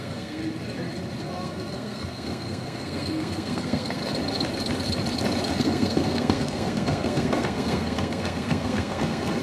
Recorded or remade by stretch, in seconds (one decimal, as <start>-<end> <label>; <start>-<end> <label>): 0.0-0.4 remade; 0.4-1.2 recorded; 1.2-4.0 remade; 4.0-5.5 recorded; 5.5-9.4 remade